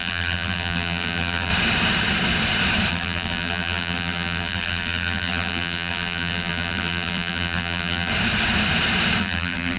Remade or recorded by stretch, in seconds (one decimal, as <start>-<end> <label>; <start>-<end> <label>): 0.0-1.5 remade; 1.5-2.9 recorded; 2.9-8.1 remade; 8.1-9.2 recorded; 9.2-9.8 remade